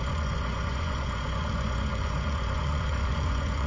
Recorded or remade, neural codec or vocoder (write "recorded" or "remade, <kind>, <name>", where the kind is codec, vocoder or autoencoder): remade, vocoder, Vocos